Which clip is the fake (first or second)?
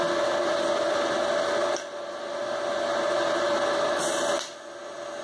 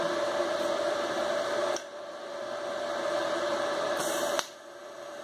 second